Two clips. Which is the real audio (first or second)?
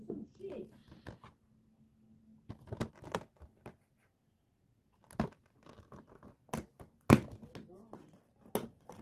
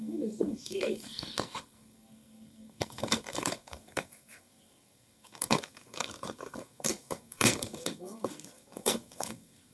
first